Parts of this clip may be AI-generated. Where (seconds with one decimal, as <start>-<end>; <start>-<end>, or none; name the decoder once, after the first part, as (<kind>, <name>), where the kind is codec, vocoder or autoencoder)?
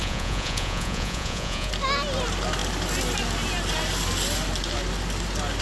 0.0-1.7 (vocoder, Vocos)